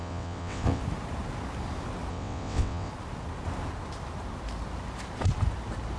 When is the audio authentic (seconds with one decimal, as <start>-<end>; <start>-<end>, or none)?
0.8-2.1; 2.9-6.0